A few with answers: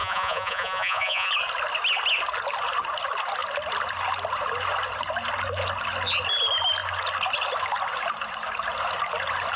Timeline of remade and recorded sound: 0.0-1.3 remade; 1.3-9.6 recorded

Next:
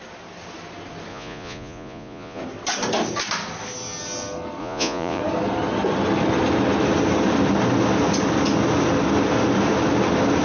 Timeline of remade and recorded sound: 0.0-1.1 recorded; 1.1-2.4 remade; 2.4-4.6 recorded; 4.6-5.2 remade; 5.2-10.4 recorded

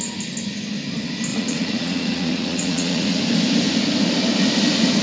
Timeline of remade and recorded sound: 0.0-1.3 recorded; 1.3-3.2 remade; 3.2-5.0 recorded

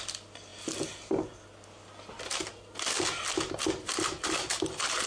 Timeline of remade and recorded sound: 0.0-5.1 recorded